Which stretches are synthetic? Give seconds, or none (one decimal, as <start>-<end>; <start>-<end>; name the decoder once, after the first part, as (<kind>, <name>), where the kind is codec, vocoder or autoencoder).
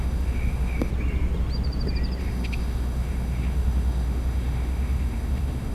0.0-0.9 (autoencoder, DAC-VAE); 2.2-5.7